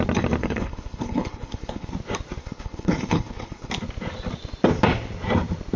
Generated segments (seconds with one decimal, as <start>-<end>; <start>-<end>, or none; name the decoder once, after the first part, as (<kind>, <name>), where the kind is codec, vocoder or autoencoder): 0.4-1.9 (codec, HILCodec); 2.4-3.7